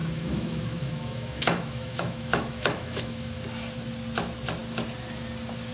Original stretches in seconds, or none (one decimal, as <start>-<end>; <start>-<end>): 3.4-5.7